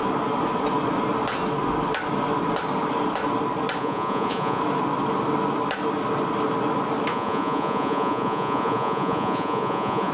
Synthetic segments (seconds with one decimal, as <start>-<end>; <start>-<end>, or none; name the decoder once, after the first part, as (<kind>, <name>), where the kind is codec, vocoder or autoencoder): 3.8-4.6 (vocoder, Vocos); 7.1-10.1